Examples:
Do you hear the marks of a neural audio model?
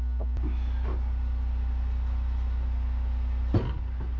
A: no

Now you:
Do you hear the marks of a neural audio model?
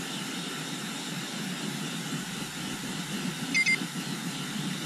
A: no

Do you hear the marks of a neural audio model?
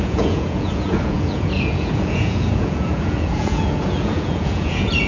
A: yes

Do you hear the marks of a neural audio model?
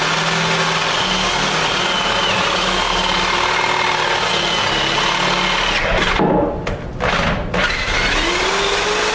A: no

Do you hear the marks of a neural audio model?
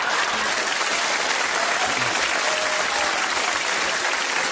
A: no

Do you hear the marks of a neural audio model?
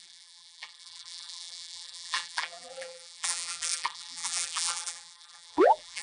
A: yes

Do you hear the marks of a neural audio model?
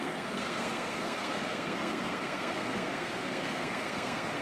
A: yes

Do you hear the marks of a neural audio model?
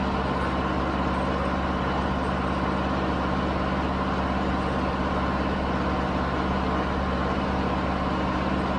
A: no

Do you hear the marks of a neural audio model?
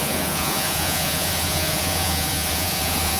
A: yes